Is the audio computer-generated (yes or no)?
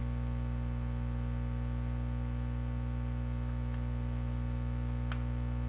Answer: no